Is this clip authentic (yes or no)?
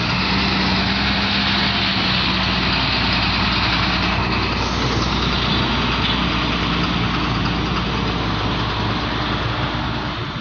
yes